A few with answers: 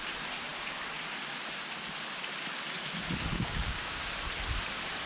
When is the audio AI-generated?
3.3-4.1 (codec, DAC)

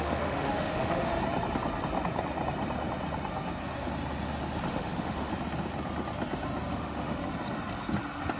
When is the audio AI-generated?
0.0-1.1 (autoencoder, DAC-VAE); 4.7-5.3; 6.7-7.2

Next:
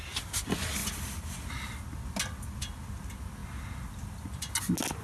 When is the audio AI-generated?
none